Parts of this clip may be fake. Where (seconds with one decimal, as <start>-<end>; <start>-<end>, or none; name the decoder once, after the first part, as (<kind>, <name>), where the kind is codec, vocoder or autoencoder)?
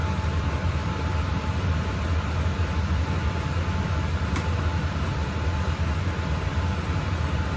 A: none